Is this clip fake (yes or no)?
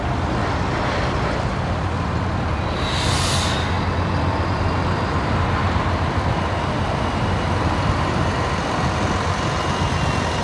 no